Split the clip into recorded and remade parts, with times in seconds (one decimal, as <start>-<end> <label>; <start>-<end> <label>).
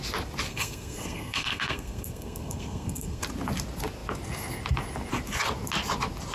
0.0-0.5 recorded; 0.5-3.2 remade; 3.2-6.3 recorded